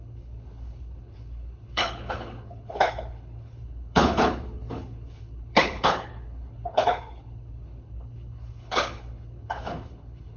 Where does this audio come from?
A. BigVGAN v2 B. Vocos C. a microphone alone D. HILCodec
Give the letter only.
D